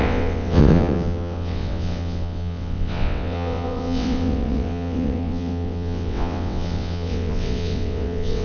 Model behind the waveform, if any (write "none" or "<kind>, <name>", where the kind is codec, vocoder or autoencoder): vocoder, WaveNeXt